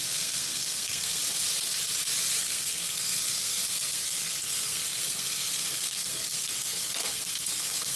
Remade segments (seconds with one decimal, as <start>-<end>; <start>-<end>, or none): 0.0-1.2; 2.4-8.0